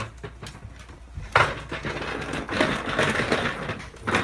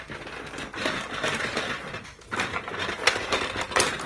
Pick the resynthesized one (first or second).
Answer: second